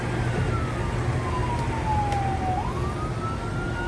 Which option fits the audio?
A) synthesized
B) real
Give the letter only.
B